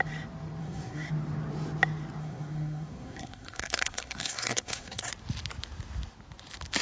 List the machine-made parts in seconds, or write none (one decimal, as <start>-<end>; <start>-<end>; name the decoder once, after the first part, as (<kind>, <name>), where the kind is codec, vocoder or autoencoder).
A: 0.6-1.1 (codec, SNAC); 2.2-5.1